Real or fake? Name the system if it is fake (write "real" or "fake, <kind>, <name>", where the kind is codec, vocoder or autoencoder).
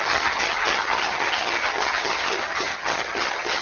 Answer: fake, vocoder, HiFi-GAN